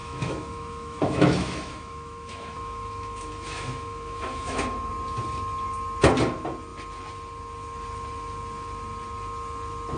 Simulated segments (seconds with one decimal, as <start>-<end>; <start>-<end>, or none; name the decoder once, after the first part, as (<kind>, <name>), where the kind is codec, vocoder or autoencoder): 0.0-4.9 (autoencoder, DAC-VAE)